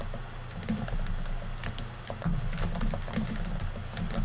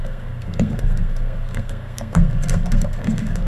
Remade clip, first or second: second